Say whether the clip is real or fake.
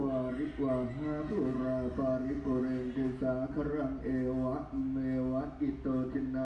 real